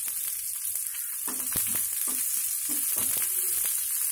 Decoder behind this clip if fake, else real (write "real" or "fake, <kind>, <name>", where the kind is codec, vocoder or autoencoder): real